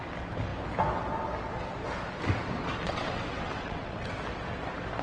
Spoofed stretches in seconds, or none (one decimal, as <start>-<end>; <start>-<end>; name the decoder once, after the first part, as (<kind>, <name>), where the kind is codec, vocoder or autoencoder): 2.8-4.1 (vocoder, WaveNeXt)